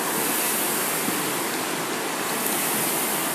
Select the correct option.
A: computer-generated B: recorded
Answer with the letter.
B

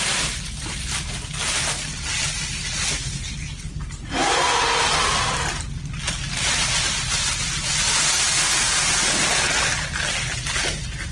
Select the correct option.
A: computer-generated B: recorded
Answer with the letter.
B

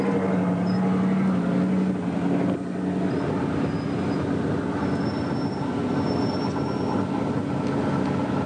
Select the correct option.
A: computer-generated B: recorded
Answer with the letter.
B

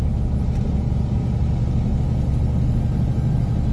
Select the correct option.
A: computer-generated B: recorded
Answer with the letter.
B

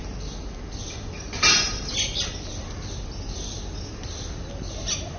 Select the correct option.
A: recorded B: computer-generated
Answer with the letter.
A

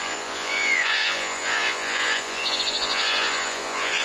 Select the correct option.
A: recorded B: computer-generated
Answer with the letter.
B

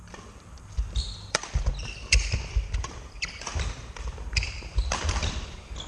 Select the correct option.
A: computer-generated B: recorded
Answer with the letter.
A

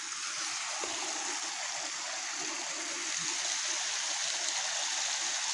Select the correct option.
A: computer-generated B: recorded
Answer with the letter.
B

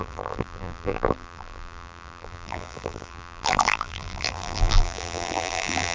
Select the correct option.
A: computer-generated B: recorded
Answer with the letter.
A